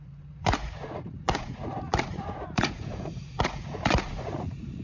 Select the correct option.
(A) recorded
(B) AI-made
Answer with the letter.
B